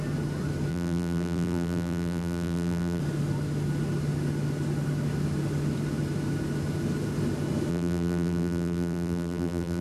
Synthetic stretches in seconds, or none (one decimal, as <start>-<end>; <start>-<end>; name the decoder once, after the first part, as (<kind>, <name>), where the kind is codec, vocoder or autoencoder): 0.7-3.0 (vocoder, BigVGAN v2); 7.7-9.8